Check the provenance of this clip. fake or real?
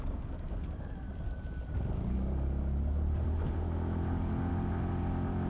real